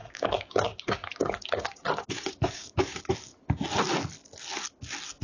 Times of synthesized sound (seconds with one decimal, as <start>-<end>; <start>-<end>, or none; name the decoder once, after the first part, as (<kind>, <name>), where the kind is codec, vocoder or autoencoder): 0.0-3.1 (codec, DAC)